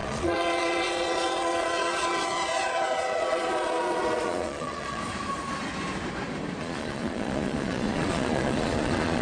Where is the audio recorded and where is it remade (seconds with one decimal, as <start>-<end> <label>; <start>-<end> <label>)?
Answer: 0.0-5.0 remade; 5.0-6.6 recorded; 6.6-9.2 remade